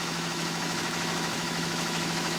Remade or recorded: remade